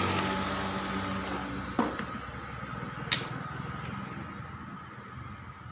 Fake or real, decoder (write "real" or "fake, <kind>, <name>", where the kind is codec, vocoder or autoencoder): real